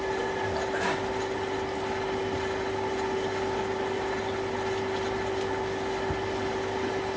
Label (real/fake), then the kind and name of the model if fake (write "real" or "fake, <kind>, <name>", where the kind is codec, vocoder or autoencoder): real